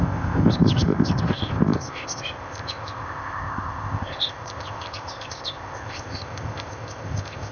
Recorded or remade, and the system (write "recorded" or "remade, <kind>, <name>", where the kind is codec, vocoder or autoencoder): remade, codec, ZipCodec